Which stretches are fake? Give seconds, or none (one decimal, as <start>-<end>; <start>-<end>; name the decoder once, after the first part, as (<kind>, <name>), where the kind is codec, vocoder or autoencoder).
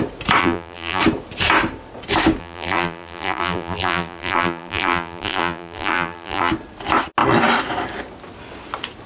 0.4-1.0 (vocoder, BigVGAN v2); 2.4-6.5